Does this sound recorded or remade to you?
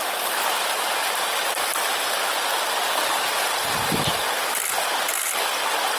remade